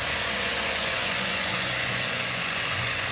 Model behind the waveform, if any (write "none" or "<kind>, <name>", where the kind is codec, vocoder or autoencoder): vocoder, Vocos